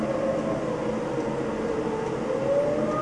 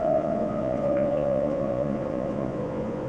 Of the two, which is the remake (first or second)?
second